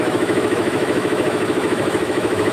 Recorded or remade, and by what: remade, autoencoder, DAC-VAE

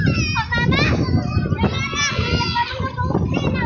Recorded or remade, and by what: recorded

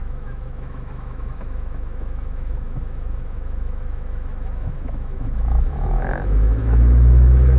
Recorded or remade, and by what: remade, autoencoder, DAC-VAE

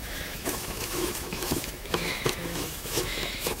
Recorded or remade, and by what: remade, autoencoder, DAC-VAE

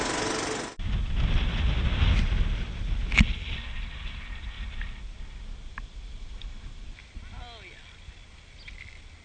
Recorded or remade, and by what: recorded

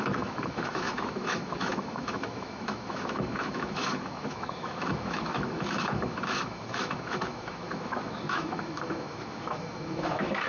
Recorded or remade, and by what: remade, autoencoder, DAC-VAE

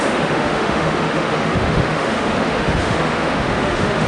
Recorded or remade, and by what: remade, autoencoder, DAC-VAE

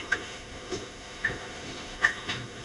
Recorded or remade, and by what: remade, autoencoder, DAC-VAE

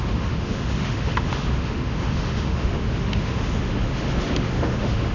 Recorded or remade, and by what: remade, autoencoder, DAC-VAE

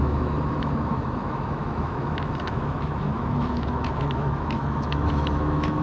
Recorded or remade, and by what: remade, autoencoder, DAC-VAE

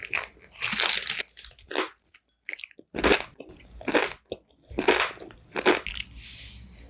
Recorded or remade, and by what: recorded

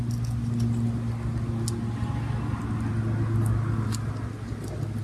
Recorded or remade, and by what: recorded